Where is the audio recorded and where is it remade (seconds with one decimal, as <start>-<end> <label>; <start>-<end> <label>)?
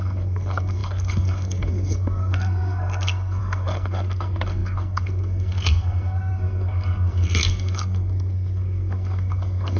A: 0.0-9.8 remade